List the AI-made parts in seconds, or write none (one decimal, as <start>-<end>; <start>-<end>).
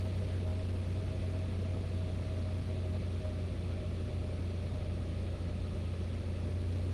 5.1-5.6